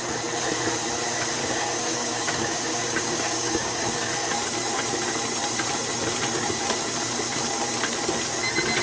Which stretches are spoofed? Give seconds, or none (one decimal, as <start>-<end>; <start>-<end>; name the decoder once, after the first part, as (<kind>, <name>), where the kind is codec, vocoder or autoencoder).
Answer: 1.4-4.1 (codec, DAC)